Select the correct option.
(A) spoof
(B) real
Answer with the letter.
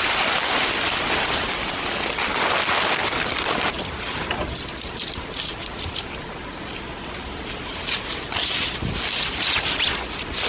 B